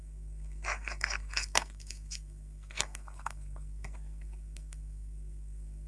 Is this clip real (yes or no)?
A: no